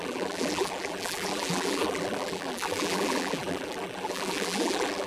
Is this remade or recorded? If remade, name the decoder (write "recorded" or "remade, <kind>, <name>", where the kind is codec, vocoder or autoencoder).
remade, vocoder, BigVGAN v2